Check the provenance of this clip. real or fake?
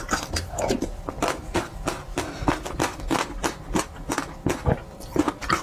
real